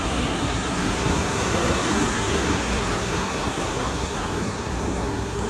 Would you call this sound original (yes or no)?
no